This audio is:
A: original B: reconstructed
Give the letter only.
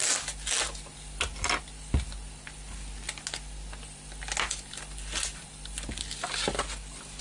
A